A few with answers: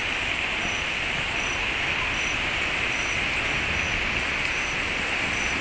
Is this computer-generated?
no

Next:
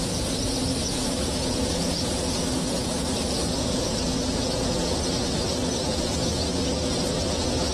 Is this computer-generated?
yes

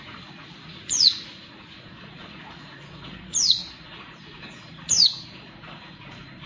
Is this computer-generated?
yes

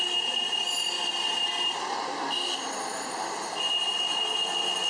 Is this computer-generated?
no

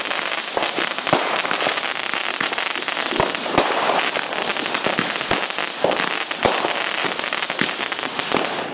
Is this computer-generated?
no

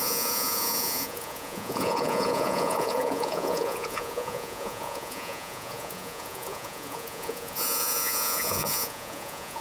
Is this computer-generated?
yes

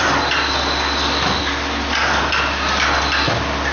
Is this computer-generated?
no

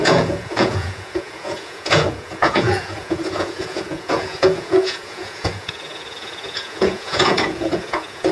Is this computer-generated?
yes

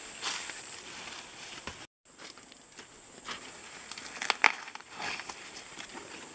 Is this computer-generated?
no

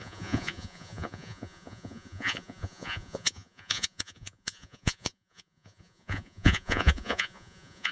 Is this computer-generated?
yes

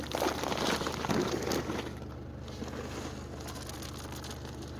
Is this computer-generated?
no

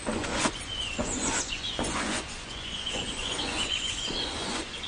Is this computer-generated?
yes